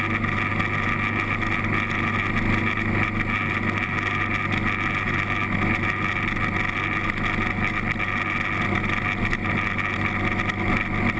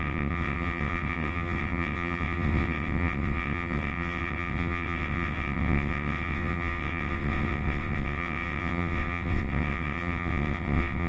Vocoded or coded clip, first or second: second